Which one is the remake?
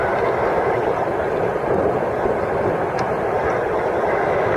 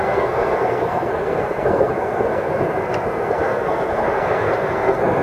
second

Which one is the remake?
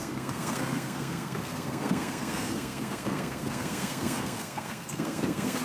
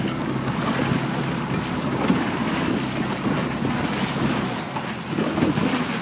first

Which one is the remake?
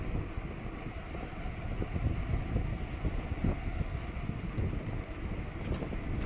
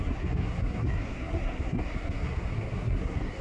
second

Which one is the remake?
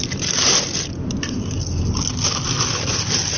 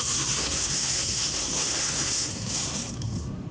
second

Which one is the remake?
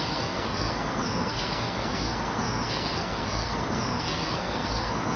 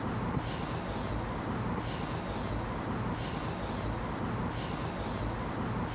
first